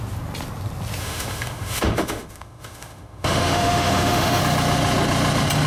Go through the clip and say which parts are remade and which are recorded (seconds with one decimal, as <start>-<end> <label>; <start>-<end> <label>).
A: 0.0-1.0 recorded; 1.0-4.4 remade; 4.4-5.7 recorded

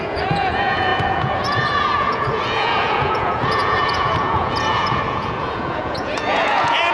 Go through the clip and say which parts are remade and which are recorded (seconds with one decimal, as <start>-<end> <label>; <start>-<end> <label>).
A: 0.0-6.9 remade

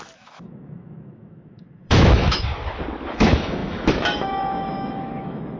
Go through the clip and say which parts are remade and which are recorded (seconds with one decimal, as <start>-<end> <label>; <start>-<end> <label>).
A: 0.0-2.5 remade; 2.5-3.1 recorded; 3.1-5.6 remade